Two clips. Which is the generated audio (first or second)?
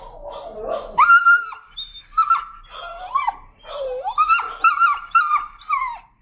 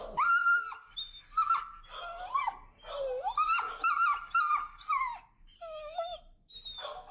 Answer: first